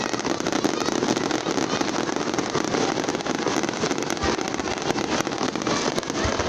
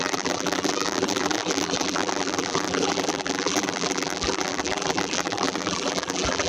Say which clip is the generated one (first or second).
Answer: second